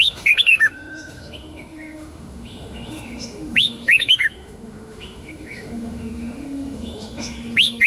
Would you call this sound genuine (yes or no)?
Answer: no